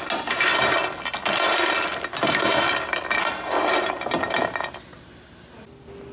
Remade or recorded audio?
recorded